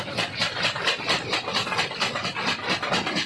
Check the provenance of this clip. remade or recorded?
recorded